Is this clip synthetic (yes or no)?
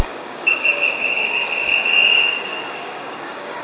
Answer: yes